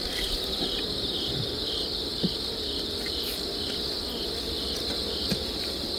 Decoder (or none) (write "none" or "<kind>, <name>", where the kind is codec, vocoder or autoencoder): none